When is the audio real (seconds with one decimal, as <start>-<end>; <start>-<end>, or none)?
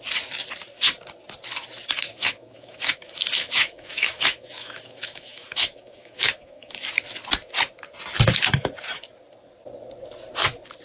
0.0-2.1; 6.9-10.8